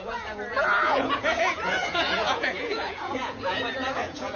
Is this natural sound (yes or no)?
no